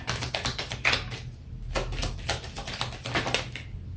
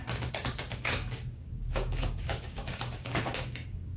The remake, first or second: second